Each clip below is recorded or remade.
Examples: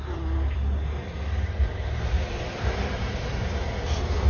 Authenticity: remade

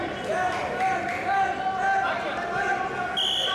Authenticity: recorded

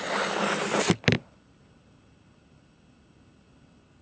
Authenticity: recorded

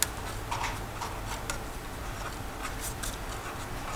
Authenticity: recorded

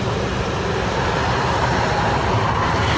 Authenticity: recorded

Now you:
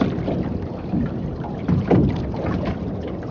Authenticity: remade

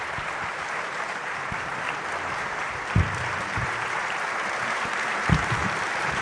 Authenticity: remade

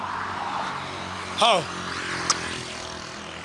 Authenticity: recorded